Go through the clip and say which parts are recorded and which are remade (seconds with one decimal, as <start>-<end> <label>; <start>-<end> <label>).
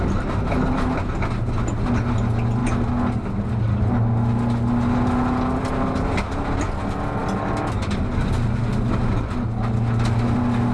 0.0-10.7 recorded